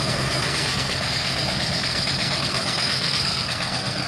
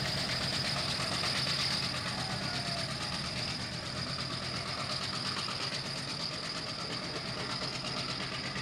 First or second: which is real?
second